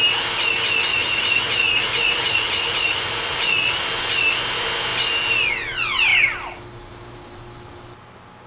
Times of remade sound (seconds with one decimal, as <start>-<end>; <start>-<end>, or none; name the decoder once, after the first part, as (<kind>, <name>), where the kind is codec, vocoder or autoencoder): 0.9-3.8 (vocoder, Vocos)